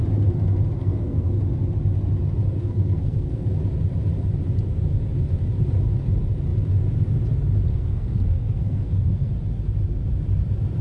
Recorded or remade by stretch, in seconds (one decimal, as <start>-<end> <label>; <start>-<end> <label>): 0.0-0.8 recorded; 0.8-1.4 remade; 1.4-2.6 recorded; 2.6-3.5 remade; 3.5-7.7 recorded; 7.7-9.3 remade; 9.3-10.8 recorded